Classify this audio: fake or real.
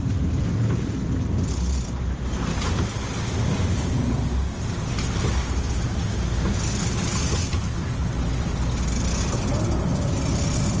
real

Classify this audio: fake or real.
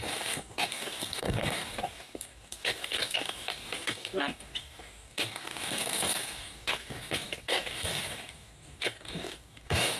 fake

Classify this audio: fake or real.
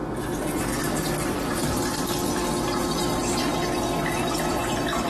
real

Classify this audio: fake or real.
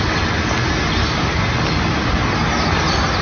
real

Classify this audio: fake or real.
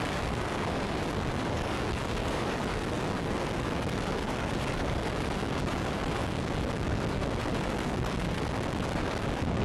fake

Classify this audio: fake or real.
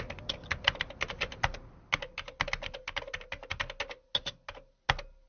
real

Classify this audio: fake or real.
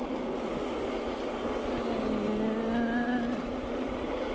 real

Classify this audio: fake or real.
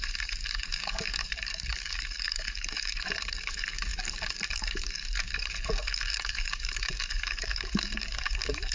fake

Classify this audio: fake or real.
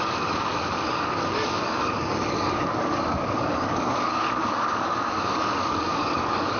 fake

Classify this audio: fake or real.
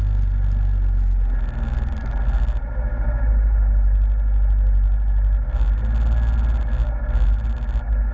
real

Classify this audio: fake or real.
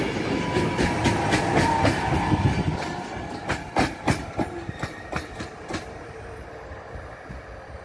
real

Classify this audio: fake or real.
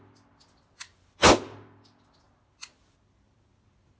real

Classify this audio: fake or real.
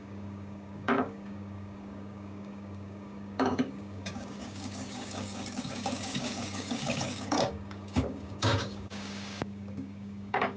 fake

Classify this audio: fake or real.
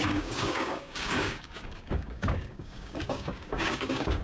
fake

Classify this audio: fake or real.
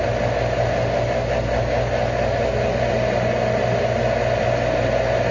real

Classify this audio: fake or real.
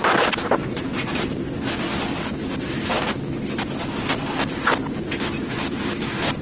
real